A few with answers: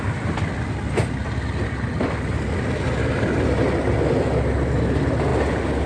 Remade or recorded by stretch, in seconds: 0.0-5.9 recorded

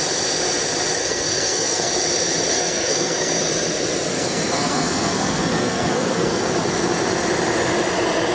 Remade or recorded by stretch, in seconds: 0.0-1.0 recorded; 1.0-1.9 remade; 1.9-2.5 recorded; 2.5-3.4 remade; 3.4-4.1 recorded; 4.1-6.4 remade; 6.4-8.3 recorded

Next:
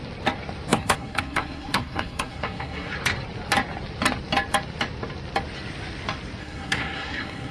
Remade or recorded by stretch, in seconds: 0.0-0.7 recorded; 0.7-2.9 remade; 2.9-6.4 recorded; 6.4-7.5 remade

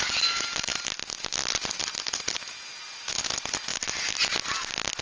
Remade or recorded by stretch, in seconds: 0.0-5.0 recorded